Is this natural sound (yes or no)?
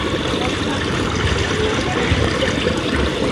yes